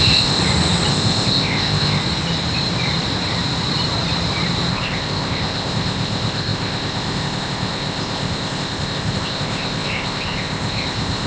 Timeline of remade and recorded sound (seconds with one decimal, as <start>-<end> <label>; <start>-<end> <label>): 0.0-0.4 remade; 0.4-0.9 recorded; 0.9-2.0 remade; 2.0-4.7 recorded; 4.7-11.3 remade